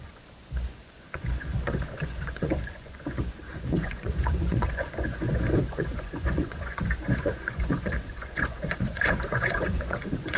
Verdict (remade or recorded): remade